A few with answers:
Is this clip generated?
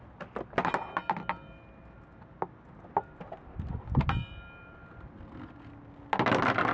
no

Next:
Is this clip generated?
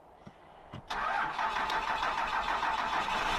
no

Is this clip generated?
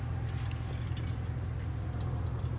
no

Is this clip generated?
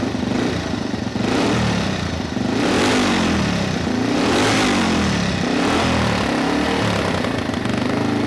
no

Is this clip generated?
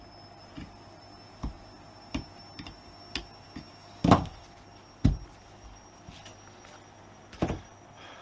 no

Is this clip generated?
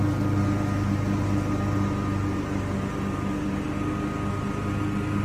no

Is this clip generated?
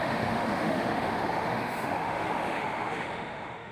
yes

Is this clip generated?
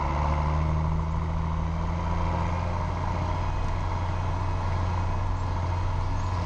no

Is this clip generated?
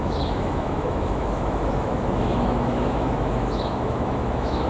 yes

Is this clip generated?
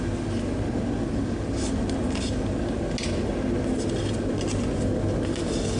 no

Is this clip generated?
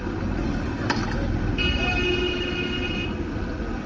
no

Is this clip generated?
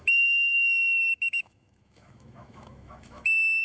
yes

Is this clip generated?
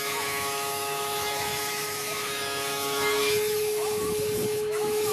yes